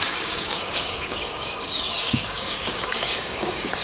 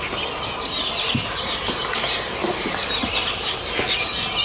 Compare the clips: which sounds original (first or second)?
second